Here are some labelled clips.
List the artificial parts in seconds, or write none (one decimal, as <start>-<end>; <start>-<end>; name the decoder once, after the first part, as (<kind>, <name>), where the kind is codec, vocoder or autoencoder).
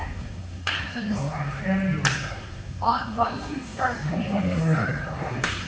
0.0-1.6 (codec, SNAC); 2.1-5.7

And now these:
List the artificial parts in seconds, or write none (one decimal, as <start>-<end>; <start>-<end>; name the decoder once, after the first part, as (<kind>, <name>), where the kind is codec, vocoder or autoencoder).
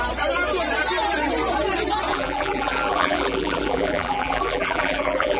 2.1-5.4 (vocoder, BigVGAN v2)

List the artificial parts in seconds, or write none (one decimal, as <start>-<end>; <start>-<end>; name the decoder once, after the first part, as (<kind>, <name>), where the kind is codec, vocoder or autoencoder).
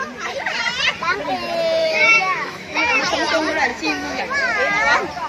1.8-3.0 (autoencoder, DAC-VAE); 3.7-4.2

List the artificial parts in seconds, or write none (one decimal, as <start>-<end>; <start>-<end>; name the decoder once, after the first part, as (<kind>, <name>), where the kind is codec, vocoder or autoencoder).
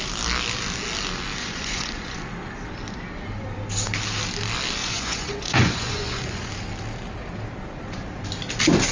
1.4-2.2 (vocoder, Vocos); 4.8-6.5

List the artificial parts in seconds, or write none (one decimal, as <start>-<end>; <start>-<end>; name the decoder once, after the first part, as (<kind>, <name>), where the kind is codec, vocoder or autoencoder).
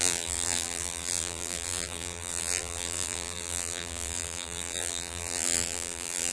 0.0-6.3 (vocoder, BigVGAN v2)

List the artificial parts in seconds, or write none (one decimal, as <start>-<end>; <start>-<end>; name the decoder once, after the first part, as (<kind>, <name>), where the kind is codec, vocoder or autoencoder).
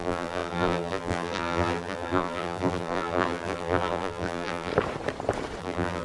0.0-4.7 (vocoder, BigVGAN v2); 5.6-6.0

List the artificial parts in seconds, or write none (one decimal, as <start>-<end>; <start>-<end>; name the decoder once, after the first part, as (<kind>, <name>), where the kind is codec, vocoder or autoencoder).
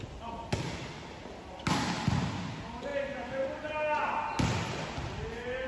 none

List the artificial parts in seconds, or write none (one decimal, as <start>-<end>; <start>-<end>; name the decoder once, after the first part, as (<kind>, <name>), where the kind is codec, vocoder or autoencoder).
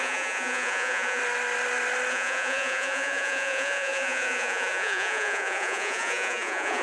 0.0-1.2 (vocoder, Vocos); 2.1-6.8